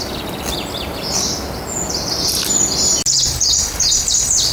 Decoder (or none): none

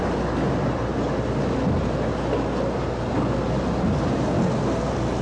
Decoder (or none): none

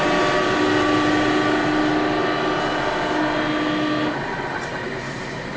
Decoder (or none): none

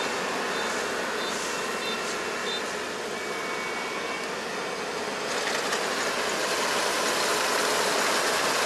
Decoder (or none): none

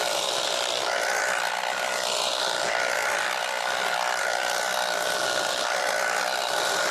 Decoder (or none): none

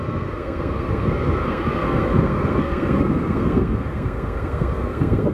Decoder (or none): codec, SNAC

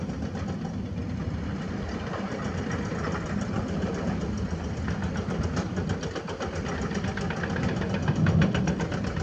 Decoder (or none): none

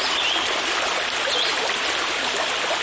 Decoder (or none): none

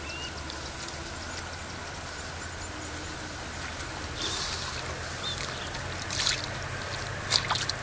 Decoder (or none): none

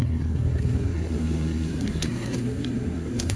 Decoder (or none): codec, SNAC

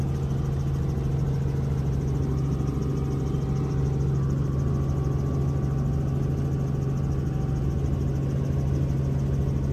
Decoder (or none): none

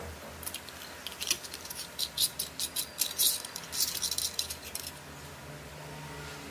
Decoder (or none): none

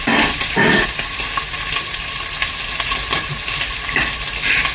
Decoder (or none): none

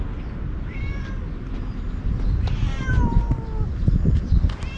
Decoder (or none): none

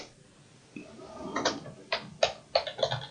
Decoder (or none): none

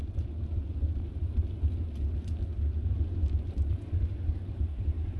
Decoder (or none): none